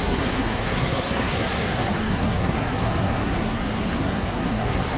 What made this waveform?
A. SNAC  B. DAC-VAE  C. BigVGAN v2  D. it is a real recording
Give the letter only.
A